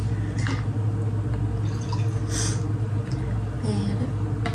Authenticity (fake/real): real